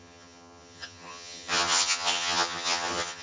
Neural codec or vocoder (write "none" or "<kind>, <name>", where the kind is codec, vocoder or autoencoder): vocoder, HiFi-GAN